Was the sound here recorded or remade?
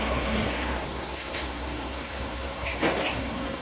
remade